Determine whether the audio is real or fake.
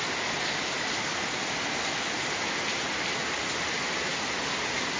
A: real